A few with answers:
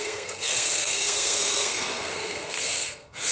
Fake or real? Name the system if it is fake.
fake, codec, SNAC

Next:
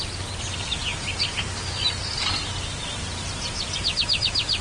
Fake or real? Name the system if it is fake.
real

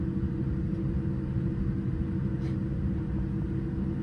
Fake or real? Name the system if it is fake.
real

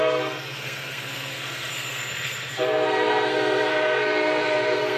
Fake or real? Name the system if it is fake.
fake, codec, SNAC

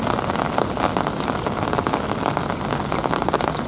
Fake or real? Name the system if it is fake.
real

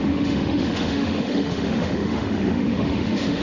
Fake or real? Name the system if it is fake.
fake, autoencoder, DAC-VAE